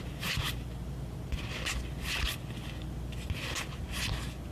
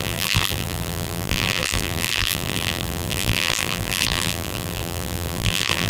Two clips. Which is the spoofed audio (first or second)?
second